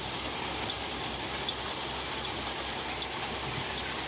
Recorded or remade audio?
recorded